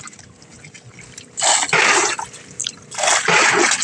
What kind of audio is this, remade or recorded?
recorded